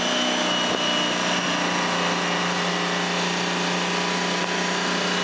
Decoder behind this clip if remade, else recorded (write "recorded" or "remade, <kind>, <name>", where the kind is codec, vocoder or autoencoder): recorded